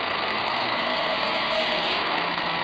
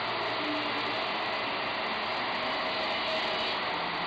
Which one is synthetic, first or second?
first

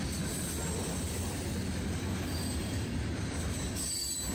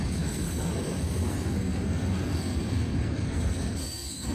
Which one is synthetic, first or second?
second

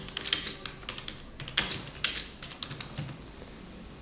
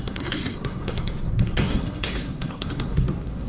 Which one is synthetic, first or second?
second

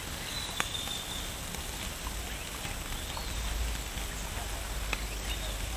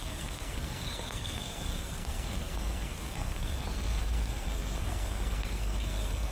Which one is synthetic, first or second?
second